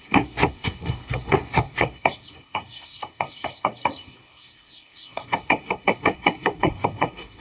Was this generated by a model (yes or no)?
yes